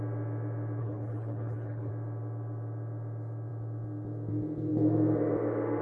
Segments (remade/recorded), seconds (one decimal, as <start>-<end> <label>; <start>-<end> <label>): 0.0-0.8 recorded; 0.8-1.9 remade; 1.9-5.8 recorded